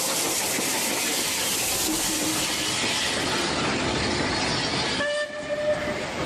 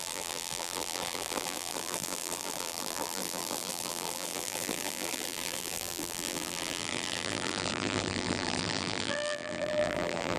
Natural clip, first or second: first